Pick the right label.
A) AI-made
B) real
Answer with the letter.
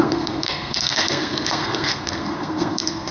A